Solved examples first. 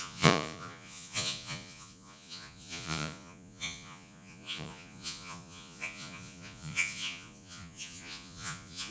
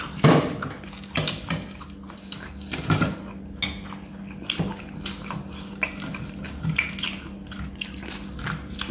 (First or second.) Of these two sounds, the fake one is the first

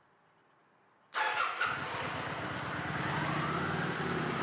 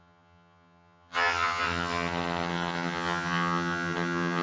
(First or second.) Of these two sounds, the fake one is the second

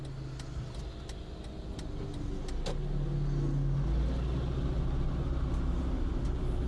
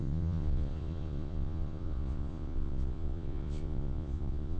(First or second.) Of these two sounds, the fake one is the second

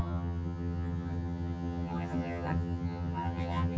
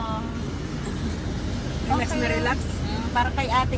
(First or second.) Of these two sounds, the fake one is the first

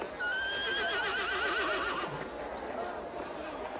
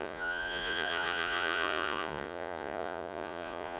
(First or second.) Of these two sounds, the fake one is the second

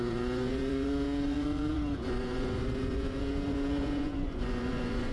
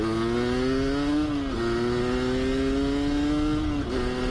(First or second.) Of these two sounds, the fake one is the first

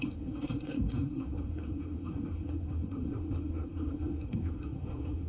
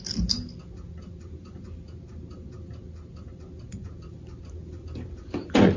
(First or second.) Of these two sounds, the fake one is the first